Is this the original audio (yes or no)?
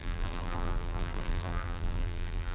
no